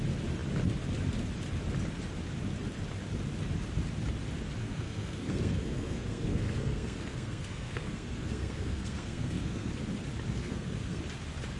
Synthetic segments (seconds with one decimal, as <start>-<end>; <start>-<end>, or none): 4.6-9.7; 10.4-11.0